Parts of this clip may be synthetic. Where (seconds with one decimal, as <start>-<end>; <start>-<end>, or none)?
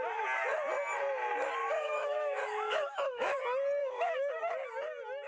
1.6-3.4; 3.8-4.3